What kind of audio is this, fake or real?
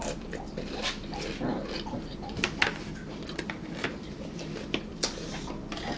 fake